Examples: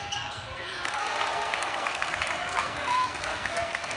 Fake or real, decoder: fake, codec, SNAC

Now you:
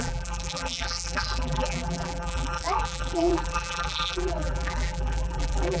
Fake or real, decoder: fake, vocoder, BigVGAN v2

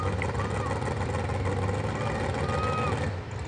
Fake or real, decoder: real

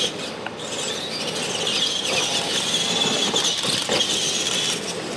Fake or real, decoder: real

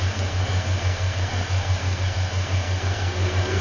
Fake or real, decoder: fake, codec, SNAC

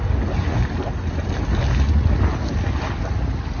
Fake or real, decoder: real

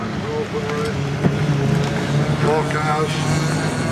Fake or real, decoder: real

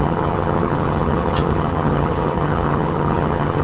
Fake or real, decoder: fake, vocoder, HiFi-GAN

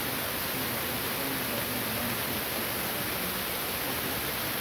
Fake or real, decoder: real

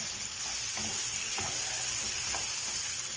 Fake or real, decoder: real